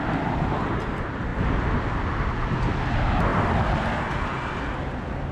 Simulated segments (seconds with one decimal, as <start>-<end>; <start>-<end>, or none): none